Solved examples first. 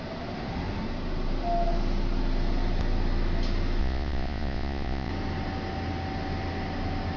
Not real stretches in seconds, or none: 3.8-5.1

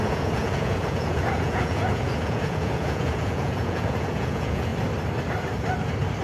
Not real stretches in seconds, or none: 0.0-4.7

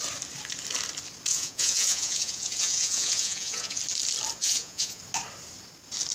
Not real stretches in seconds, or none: 1.3-3.8; 4.4-5.0

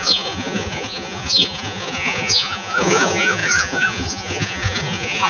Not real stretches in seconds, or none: 0.0-5.3

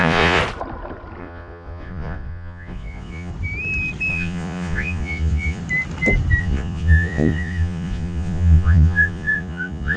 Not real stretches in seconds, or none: 0.0-0.4; 1.2-3.3; 4.1-5.6; 6.4-10.0

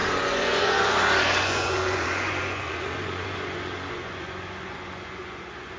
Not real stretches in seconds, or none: 0.0-5.8

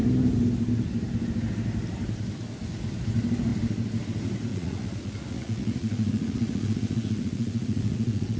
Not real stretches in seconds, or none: 4.5-8.4